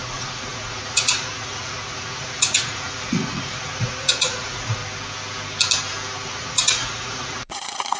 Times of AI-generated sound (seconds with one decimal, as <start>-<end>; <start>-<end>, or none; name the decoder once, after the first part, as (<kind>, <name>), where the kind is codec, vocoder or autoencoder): 0.0-4.8 (vocoder, Vocos); 6.3-8.0